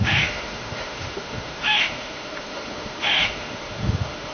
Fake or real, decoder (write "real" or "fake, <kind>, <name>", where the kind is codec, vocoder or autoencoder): fake, autoencoder, DAC-VAE